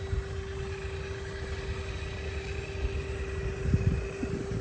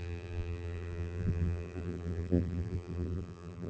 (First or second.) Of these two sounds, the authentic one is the first